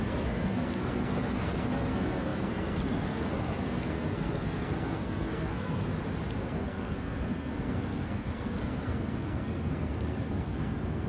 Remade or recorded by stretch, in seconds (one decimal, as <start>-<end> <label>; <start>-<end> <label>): 0.0-5.9 remade; 5.9-6.4 recorded; 6.4-11.1 remade